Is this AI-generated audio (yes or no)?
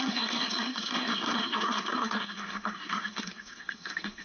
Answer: yes